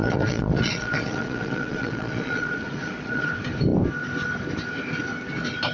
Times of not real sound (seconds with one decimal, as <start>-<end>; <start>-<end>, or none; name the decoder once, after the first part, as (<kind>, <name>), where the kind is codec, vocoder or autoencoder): 0.0-3.3 (vocoder, Vocos)